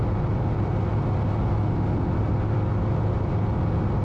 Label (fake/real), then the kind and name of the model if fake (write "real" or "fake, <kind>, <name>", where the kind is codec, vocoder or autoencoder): real